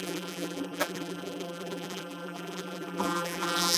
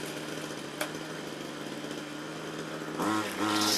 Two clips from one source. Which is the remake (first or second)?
first